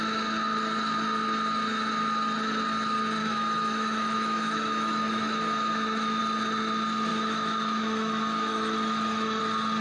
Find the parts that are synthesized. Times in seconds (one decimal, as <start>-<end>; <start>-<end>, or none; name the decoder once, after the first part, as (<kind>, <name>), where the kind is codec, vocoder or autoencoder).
3.2-6.2 (autoencoder, DAC-VAE); 7.1-9.4